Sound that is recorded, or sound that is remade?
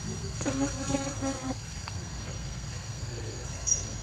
remade